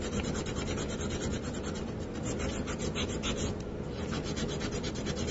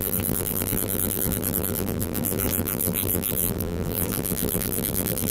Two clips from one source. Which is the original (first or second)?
first